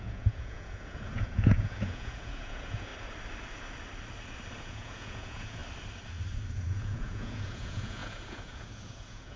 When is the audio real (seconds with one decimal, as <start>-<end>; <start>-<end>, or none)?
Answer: 2.9-4.6; 5.6-6.5